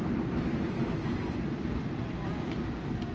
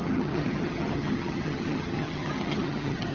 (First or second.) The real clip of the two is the first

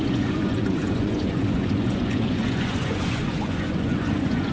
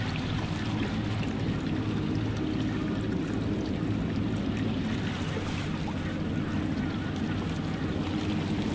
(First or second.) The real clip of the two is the second